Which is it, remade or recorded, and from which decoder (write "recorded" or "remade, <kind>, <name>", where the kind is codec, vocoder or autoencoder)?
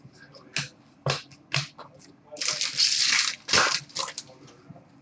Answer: recorded